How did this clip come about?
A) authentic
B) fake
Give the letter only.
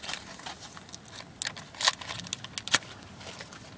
A